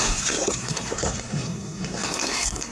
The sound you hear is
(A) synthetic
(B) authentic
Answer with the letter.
A